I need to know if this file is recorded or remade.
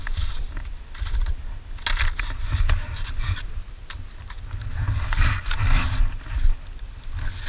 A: recorded